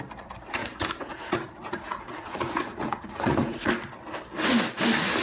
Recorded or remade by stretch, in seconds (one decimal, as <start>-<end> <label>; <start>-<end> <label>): 0.0-0.6 recorded; 0.6-3.7 remade; 3.7-5.2 recorded